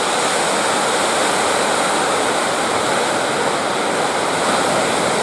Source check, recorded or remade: recorded